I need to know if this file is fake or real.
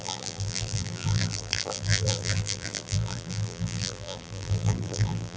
fake